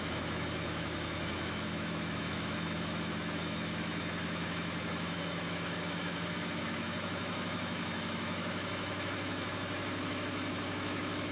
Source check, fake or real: fake